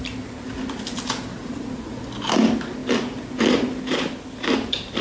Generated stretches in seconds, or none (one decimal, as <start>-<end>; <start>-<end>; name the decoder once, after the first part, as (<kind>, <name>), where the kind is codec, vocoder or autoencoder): 1.4-2.0 (vocoder, Vocos)